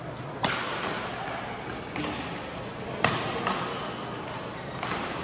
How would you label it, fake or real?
real